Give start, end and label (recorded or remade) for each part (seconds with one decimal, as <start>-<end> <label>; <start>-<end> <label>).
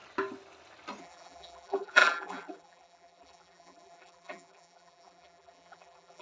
0.0-1.0 recorded; 1.0-6.2 remade